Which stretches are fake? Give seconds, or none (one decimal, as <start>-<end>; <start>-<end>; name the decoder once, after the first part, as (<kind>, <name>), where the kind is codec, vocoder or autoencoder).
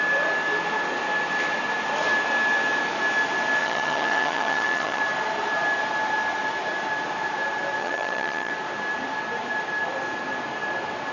3.6-5.0 (vocoder, HiFi-GAN); 7.8-8.5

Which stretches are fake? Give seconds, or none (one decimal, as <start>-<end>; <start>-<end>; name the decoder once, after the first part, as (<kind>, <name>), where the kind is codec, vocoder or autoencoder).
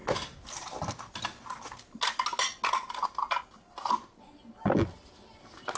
none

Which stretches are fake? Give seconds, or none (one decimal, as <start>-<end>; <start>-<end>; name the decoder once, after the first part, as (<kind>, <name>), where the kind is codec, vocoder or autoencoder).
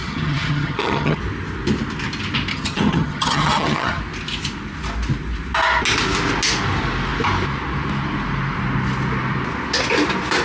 0.0-1.2 (vocoder, HiFi-GAN); 2.5-4.0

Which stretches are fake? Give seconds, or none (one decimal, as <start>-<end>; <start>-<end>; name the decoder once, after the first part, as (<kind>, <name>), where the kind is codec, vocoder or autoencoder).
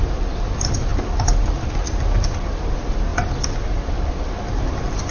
none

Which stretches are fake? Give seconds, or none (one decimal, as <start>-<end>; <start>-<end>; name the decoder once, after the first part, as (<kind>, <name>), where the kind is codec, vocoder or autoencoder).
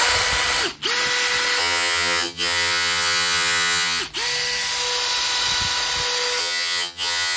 1.6-4.0 (vocoder, HiFi-GAN); 6.4-7.4